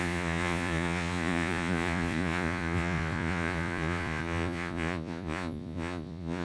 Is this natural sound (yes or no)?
no